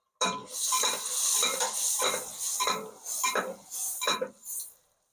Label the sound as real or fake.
real